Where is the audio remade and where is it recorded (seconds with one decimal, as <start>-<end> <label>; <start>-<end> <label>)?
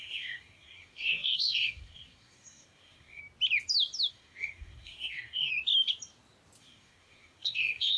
0.0-3.2 remade; 3.2-4.1 recorded; 4.1-5.5 remade; 5.5-6.6 recorded; 6.6-8.0 remade